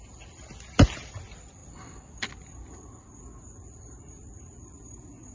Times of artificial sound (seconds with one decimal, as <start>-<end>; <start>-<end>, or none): none